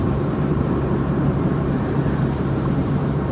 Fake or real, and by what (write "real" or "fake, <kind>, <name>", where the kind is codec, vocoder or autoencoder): fake, vocoder, BigVGAN v2